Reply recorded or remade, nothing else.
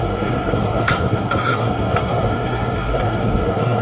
remade